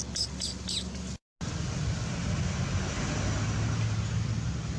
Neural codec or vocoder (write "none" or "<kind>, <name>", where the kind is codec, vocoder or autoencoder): none